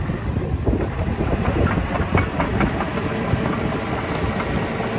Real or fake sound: real